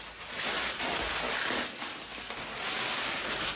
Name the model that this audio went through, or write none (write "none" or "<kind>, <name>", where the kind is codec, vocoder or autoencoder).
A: none